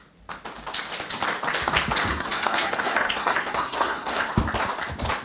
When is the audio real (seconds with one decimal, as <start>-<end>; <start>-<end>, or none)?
0.0-2.1; 4.3-5.2

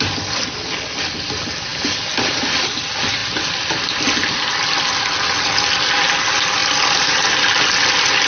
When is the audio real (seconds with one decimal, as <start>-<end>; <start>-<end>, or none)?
0.0-6.6; 7.3-8.3

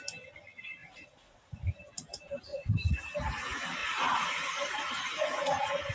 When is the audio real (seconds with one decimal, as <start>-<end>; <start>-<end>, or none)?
0.0-0.8; 1.8-2.5; 3.2-3.8

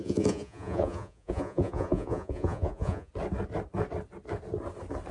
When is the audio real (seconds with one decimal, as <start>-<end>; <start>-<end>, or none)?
3.1-5.1

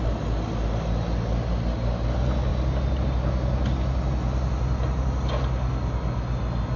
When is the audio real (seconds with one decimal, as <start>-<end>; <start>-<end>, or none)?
0.0-6.8

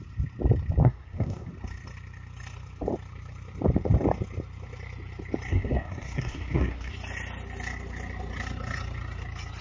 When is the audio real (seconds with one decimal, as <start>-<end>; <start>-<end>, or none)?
0.0-0.8; 1.5-5.5; 6.9-9.6

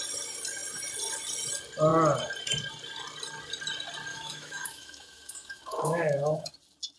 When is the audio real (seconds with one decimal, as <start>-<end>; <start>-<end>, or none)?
0.0-4.1; 6.5-7.0

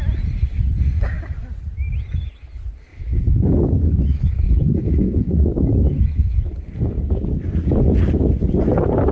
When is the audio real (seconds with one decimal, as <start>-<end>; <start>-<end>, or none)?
0.0-2.9; 6.6-9.1